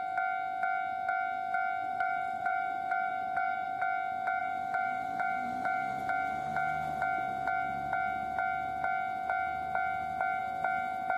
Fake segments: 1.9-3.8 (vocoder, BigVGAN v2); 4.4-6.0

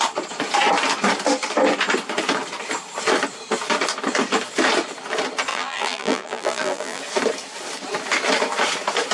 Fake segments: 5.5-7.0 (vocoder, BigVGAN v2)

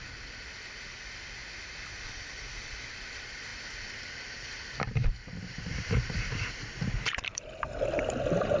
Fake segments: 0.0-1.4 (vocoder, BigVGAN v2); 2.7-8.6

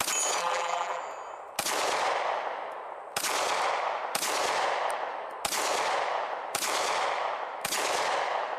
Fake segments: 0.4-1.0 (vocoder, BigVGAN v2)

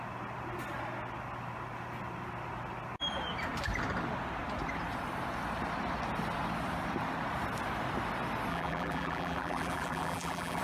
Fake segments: 8.5-10.6 (vocoder, BigVGAN v2)

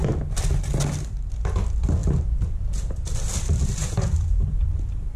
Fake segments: 2.0-5.2 (vocoder, BigVGAN v2)

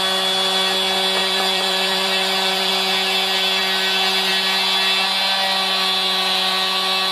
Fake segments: 1.2-2.7 (vocoder, BigVGAN v2)

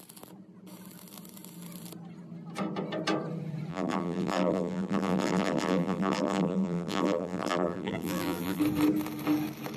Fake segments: 3.7-8.6 (vocoder, BigVGAN v2)